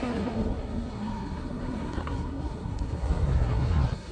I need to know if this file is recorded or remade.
remade